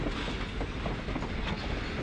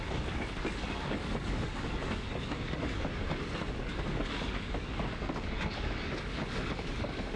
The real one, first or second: first